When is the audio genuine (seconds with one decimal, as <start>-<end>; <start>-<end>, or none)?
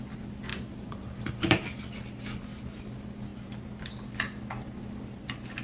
0.0-0.5; 1.8-3.3; 3.9-5.6